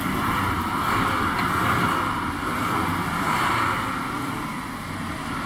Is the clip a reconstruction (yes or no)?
no